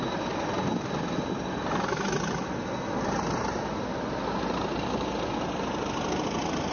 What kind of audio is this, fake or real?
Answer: real